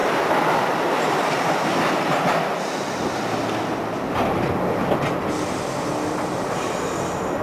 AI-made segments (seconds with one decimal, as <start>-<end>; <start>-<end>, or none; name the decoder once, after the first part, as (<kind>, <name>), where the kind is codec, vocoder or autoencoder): 0.0-1.6 (vocoder, BigVGAN v2)